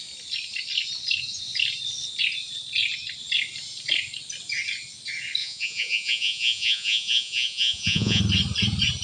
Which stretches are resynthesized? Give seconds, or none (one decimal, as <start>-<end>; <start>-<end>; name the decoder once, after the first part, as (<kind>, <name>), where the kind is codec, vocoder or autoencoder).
5.4-8.2 (vocoder, Vocos)